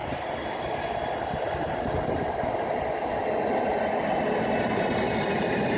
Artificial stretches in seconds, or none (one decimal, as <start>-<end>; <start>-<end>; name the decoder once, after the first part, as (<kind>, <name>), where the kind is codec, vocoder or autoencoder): none